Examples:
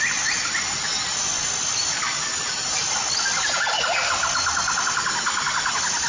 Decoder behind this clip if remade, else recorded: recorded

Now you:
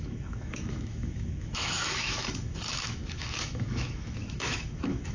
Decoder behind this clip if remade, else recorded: remade, autoencoder, DAC-VAE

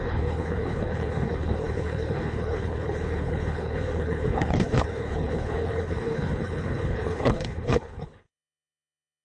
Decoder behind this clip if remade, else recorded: remade, codec, HILCodec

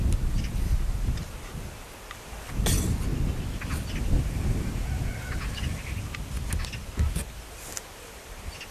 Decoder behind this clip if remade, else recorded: recorded